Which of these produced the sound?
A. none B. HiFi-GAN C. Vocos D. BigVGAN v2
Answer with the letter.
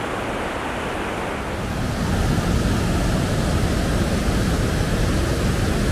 A